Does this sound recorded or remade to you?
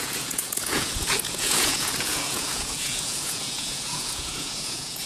remade